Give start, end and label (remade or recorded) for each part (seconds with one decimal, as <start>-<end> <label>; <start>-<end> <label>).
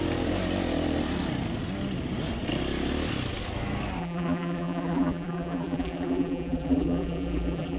0.0-4.0 recorded; 4.0-7.8 remade